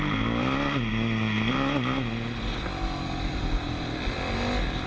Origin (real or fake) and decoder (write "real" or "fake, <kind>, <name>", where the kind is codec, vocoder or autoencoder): real